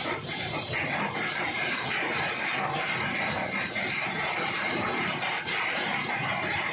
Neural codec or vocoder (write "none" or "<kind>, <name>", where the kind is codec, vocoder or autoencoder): vocoder, BigVGAN v2